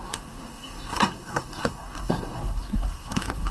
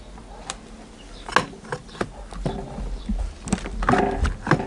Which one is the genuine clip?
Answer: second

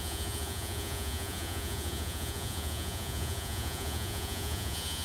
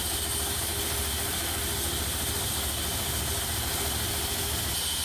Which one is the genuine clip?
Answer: second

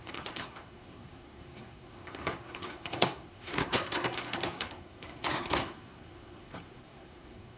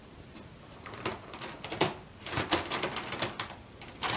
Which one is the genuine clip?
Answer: second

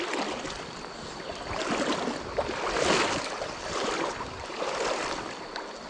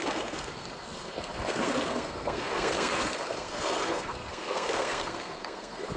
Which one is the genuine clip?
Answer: first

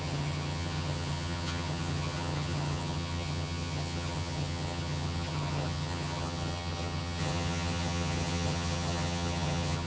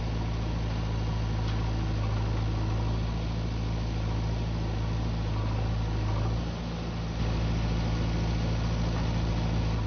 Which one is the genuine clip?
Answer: second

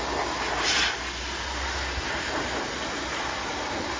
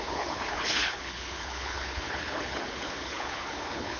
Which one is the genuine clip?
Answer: first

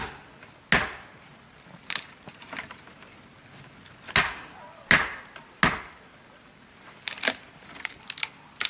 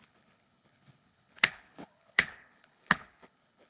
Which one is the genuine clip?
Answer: first